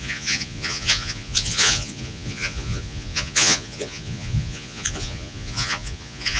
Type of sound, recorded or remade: remade